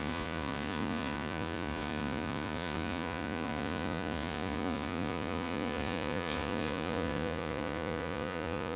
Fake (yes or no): yes